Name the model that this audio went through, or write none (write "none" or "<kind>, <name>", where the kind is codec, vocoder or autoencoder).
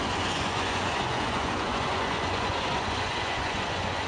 vocoder, Vocos